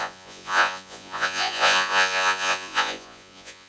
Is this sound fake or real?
fake